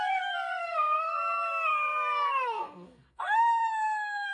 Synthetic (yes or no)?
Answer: yes